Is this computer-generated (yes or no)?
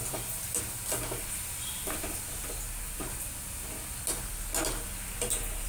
no